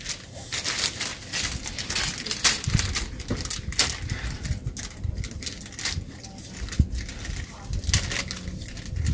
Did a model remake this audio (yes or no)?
no